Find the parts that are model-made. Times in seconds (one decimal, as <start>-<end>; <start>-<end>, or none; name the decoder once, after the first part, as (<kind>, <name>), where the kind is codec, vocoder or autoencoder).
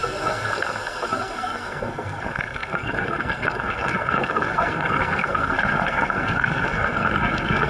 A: 0.0-7.7 (codec, SNAC)